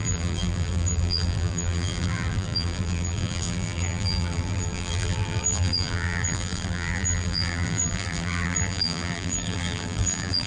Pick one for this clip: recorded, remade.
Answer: remade